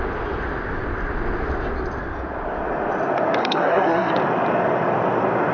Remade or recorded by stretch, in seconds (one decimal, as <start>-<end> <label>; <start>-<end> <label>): 0.0-3.4 recorded; 3.4-4.1 remade; 4.1-5.5 recorded